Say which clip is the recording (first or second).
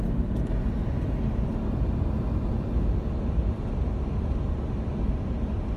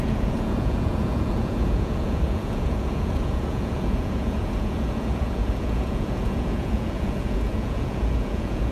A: first